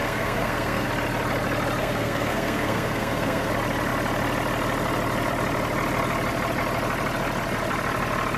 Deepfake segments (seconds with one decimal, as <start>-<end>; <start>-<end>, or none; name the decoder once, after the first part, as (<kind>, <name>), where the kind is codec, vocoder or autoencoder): 0.0-0.9 (codec, SNAC); 1.8-3.5

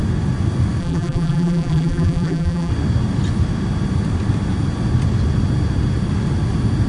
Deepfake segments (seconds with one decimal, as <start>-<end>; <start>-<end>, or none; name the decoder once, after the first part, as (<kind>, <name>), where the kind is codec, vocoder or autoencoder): 0.8-2.7 (vocoder, BigVGAN v2)

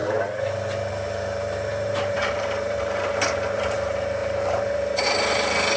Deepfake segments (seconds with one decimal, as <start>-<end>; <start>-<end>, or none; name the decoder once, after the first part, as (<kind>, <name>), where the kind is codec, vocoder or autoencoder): 0.9-5.8 (vocoder, BigVGAN v2)

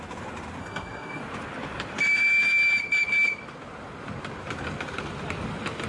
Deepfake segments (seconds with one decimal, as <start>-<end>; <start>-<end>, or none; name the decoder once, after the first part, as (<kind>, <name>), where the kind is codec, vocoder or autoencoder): 0.6-1.2 (codec, SNAC)